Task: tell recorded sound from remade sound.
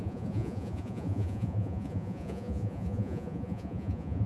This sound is remade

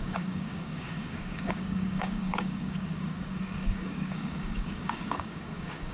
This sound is remade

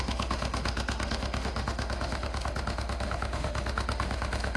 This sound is remade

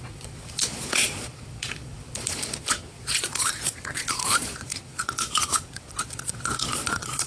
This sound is remade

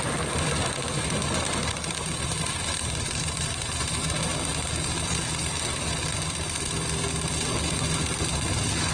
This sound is recorded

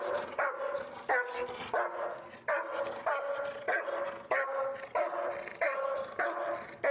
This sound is recorded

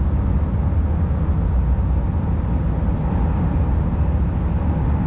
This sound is recorded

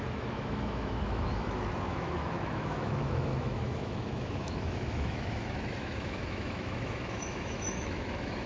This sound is remade